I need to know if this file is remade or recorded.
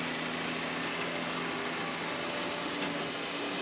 recorded